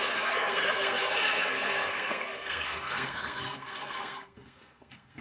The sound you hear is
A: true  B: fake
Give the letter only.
B